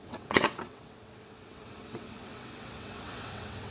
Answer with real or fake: fake